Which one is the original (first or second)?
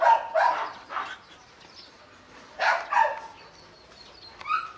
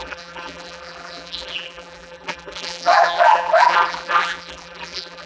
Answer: first